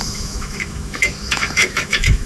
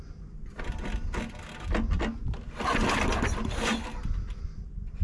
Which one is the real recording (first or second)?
second